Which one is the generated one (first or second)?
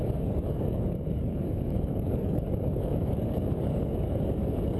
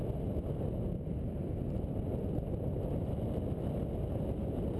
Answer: first